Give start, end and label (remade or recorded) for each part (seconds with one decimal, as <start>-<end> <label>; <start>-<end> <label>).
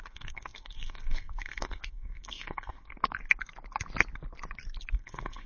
0.0-2.9 remade; 2.9-4.9 recorded; 4.9-5.5 remade